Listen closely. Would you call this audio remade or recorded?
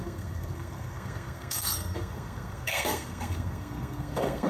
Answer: remade